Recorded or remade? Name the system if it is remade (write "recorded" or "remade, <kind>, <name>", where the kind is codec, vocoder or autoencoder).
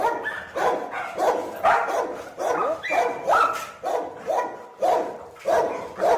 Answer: recorded